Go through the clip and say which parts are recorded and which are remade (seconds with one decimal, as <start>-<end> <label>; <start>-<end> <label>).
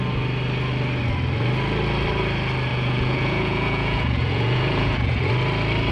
0.0-2.7 recorded; 2.7-5.3 remade; 5.3-5.9 recorded